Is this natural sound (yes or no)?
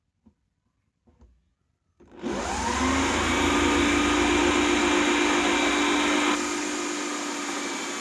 yes